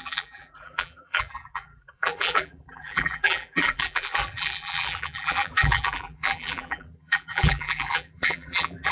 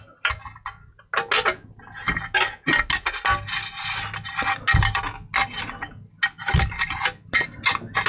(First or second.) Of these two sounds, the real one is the second